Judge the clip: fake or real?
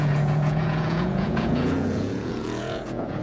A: fake